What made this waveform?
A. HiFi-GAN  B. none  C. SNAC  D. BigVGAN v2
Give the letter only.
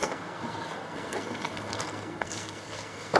C